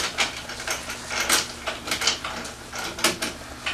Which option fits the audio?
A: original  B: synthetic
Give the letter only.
A